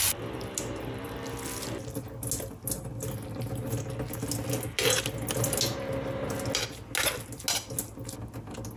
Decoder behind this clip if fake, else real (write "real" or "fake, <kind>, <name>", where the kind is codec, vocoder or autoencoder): real